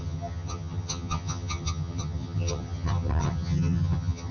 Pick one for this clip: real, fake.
fake